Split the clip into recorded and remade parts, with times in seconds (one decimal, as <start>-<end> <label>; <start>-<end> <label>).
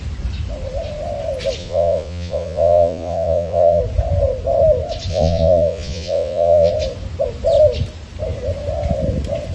0.0-1.6 recorded; 1.6-3.8 remade; 3.8-5.1 recorded; 5.1-6.7 remade; 6.7-9.5 recorded